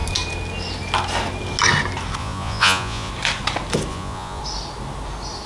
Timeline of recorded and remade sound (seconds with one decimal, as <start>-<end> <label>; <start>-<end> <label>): 0.0-2.2 recorded; 2.2-3.1 remade; 3.1-3.9 recorded; 3.9-4.4 remade; 4.4-5.5 recorded